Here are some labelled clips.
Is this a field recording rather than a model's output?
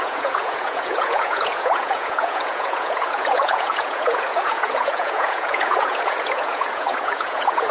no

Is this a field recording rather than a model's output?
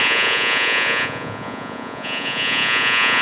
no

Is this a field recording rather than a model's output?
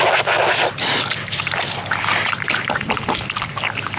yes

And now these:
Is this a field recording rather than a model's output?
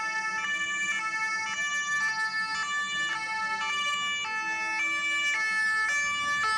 yes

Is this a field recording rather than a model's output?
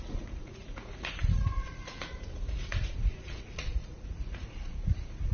no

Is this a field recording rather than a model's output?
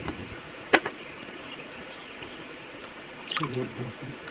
no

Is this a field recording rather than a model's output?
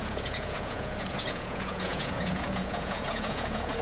no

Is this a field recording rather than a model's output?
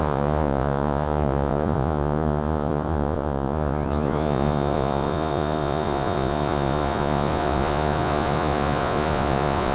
no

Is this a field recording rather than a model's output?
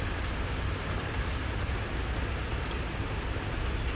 yes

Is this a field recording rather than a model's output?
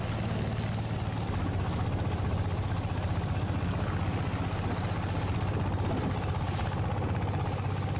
yes